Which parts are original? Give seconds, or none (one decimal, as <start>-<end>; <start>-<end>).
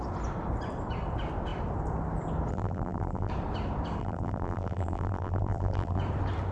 0.0-2.5; 3.3-4.0; 6.0-6.5